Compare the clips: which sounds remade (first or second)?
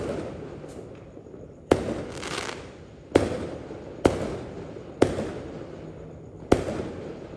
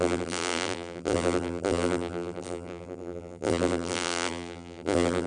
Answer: second